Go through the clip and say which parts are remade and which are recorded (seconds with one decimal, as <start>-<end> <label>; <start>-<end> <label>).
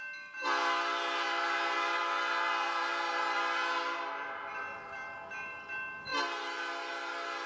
0.0-7.5 recorded